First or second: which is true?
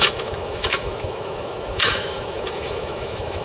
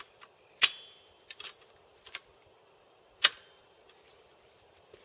second